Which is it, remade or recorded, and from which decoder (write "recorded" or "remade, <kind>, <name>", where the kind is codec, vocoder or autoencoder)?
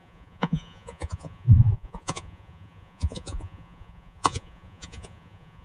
remade, vocoder, Vocos